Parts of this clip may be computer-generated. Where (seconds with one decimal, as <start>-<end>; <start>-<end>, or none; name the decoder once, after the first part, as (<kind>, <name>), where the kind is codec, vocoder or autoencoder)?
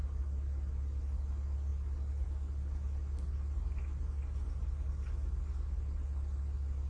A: none